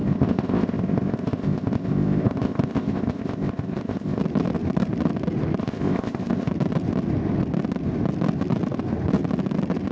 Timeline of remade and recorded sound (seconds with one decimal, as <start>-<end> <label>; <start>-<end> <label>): 0.0-4.2 remade; 4.2-5.6 recorded; 5.6-6.5 remade; 6.5-9.9 recorded